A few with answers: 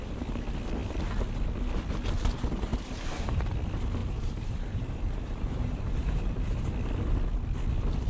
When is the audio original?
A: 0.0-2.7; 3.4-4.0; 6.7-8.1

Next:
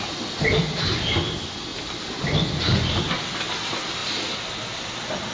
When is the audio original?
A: 0.0-5.3

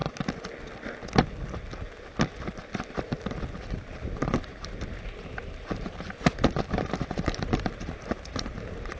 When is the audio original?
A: 0.0-3.7

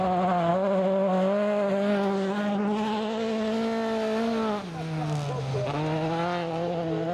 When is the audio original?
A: 0.0-7.1

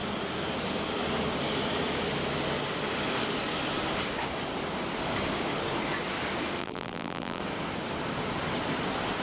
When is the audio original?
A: 0.0-6.6; 7.4-9.2

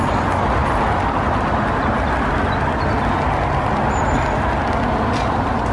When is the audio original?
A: 0.0-5.7